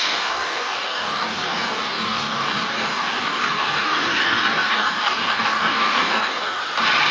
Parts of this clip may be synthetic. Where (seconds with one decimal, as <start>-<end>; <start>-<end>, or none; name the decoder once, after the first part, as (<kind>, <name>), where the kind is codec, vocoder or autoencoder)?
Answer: 0.0-6.6 (codec, DAC)